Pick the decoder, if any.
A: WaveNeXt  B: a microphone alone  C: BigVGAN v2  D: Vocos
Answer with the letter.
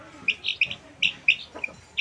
B